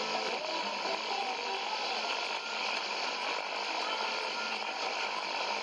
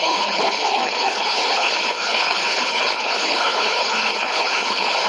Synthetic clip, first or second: second